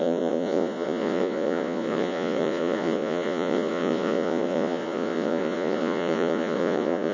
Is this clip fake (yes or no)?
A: yes